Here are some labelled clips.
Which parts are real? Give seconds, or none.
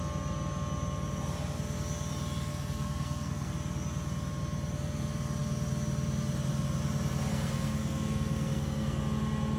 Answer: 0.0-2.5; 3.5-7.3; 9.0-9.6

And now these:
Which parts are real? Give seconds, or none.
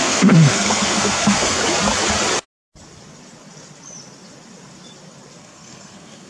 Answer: 1.6-5.4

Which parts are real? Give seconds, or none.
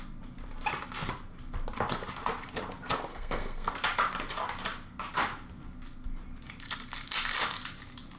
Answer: 0.0-3.1; 3.7-8.2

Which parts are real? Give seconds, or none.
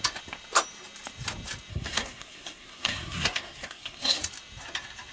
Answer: 0.0-1.7; 4.2-5.1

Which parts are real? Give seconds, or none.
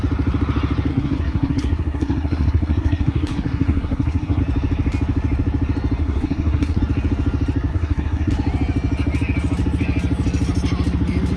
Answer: 0.0-0.9; 4.4-6.0; 6.8-7.7; 8.3-11.4